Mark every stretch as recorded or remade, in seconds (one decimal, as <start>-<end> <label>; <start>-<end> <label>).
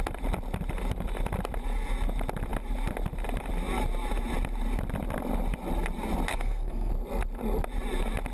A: 0.0-6.3 recorded; 6.3-6.9 remade; 6.9-8.3 recorded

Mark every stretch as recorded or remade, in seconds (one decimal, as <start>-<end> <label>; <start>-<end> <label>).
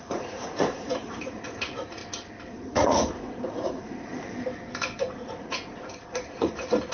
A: 0.0-2.0 remade; 2.0-2.5 recorded; 2.5-4.1 remade; 4.1-5.0 recorded; 5.0-6.9 remade